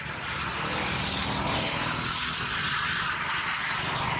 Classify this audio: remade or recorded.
recorded